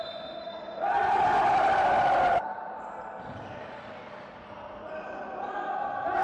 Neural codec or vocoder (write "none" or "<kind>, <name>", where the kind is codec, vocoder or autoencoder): none